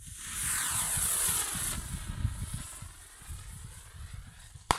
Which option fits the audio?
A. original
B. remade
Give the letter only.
A